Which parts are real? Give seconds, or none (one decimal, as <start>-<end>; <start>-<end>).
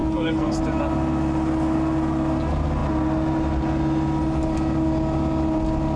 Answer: 0.6-6.0